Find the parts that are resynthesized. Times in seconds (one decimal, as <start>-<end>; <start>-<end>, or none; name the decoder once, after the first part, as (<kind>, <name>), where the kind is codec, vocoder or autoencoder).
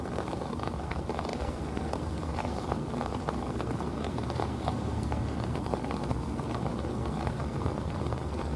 0.0-8.6 (codec, SNAC)